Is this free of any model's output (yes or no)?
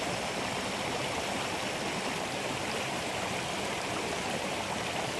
yes